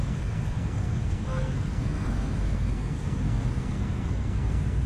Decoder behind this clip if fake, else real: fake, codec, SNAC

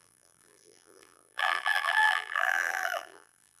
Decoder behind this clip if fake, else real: fake, vocoder, BigVGAN v2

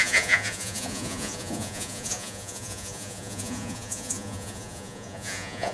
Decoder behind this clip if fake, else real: fake, vocoder, Vocos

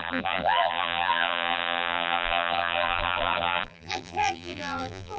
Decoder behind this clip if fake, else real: fake, vocoder, BigVGAN v2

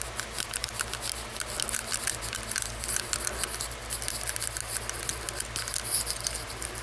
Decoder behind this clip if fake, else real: real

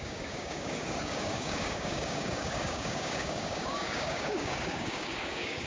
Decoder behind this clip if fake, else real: fake, codec, DAC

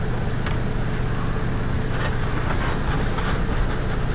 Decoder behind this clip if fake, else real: real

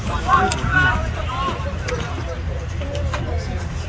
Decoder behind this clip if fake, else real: real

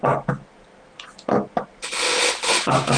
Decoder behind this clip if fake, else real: real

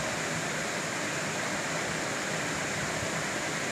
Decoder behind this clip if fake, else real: real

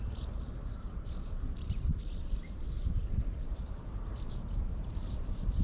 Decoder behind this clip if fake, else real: fake, vocoder, BigVGAN v2